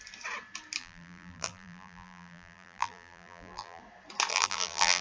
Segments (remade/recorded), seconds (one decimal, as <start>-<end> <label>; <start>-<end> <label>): 0.0-0.8 recorded; 0.8-3.8 remade; 3.8-4.3 recorded; 4.3-5.0 remade